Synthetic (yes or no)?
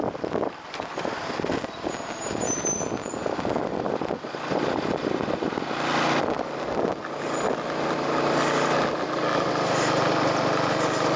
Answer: no